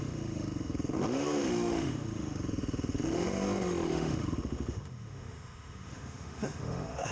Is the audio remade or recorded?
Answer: remade